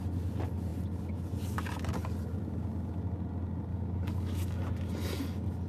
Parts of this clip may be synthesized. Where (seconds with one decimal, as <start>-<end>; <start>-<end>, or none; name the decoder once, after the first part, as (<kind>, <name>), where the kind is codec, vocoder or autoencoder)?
3.7-4.6 (codec, DAC)